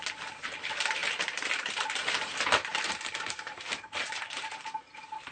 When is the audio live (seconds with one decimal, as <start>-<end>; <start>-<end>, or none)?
none